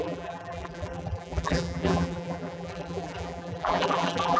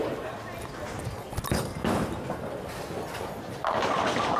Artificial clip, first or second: first